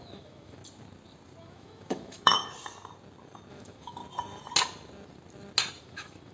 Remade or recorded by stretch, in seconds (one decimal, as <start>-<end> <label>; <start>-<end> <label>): 0.0-0.6 remade; 0.6-1.4 recorded; 1.4-2.4 remade; 2.4-3.5 recorded; 3.5-4.0 remade; 4.0-5.8 recorded; 5.8-6.3 remade